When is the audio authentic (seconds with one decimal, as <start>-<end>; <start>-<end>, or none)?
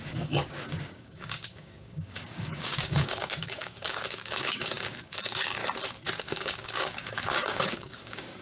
5.6-6.2